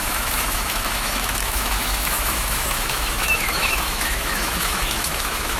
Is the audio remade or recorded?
remade